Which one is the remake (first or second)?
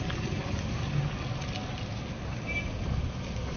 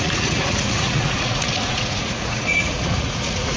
second